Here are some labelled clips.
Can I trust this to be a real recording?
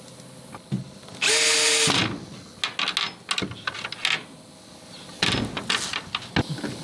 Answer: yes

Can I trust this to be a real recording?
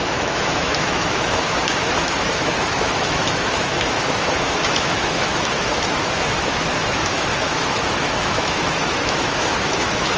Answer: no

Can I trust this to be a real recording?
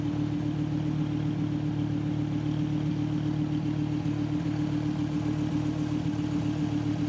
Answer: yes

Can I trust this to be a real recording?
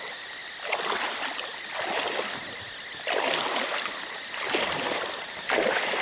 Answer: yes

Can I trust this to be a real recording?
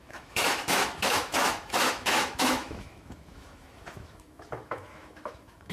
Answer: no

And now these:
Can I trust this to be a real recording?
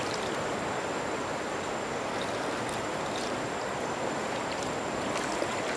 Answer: yes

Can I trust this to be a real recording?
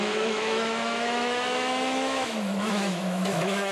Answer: no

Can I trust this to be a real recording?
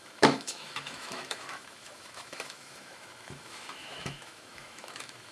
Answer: no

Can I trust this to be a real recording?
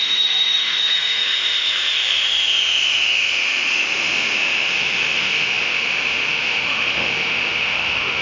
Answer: no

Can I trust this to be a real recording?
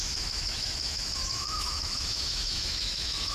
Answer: no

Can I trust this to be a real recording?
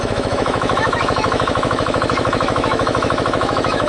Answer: no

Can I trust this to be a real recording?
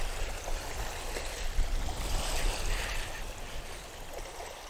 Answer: yes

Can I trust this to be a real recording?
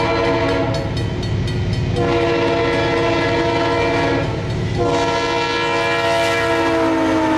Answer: yes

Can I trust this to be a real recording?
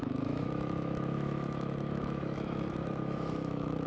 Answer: no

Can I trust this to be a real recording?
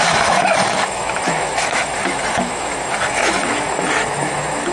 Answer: no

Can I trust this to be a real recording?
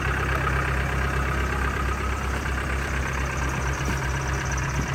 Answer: yes